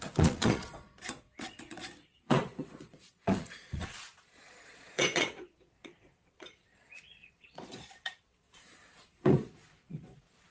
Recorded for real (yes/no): no